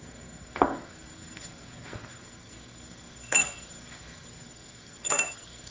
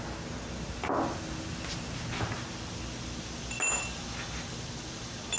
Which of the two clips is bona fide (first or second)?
second